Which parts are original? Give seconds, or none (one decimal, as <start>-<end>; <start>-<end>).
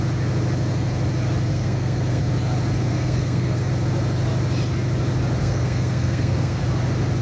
0.0-1.5; 2.2-2.9; 3.7-5.4; 6.6-7.2